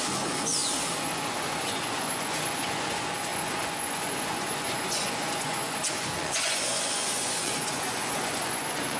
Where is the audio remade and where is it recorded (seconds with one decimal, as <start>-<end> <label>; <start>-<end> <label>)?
0.0-9.0 remade